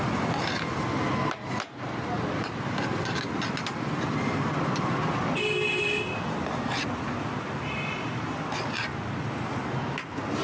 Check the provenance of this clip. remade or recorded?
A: recorded